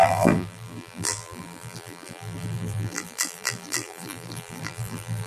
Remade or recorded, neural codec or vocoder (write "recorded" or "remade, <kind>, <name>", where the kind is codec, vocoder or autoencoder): remade, vocoder, BigVGAN v2